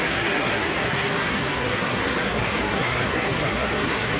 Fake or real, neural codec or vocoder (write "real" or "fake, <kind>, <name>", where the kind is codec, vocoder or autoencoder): fake, codec, SNAC